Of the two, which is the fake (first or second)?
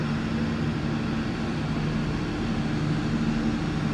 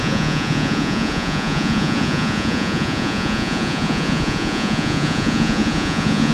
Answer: second